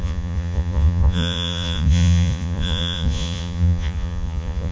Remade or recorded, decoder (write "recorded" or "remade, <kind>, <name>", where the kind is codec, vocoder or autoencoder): remade, vocoder, Vocos